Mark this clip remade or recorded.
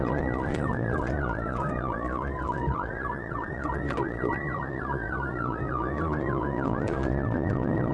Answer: remade